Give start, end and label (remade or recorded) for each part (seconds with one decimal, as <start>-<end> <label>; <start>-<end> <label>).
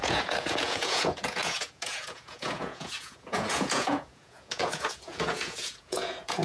0.0-6.4 remade